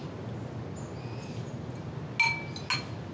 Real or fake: real